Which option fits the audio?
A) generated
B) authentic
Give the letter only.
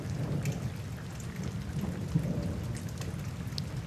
B